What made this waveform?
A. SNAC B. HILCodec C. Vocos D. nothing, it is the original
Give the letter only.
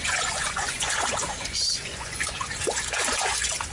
C